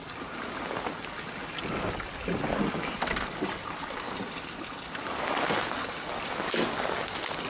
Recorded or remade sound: recorded